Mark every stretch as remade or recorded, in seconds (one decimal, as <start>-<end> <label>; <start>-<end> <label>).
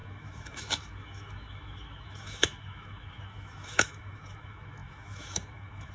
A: 0.0-5.9 remade